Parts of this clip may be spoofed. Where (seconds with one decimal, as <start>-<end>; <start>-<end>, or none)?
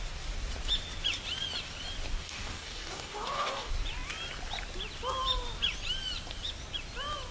2.2-3.7